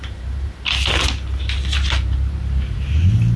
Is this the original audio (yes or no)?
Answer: yes